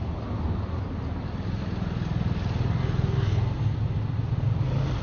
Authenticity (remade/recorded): recorded